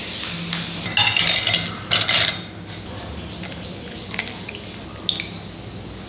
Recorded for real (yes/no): yes